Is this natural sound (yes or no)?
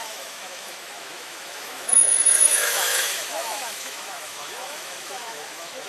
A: no